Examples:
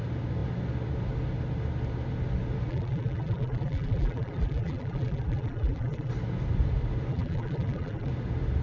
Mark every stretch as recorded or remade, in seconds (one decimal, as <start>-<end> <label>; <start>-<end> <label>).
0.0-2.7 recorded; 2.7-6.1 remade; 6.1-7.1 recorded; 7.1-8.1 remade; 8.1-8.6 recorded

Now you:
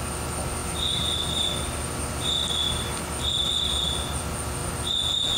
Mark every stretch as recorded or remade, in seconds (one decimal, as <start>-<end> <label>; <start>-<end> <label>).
0.0-5.4 recorded

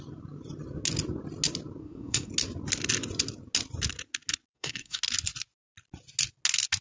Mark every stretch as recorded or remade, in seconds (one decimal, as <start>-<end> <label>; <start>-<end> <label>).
0.0-1.8 recorded; 1.8-2.3 remade; 2.3-4.5 recorded; 4.5-5.0 remade; 5.0-6.8 recorded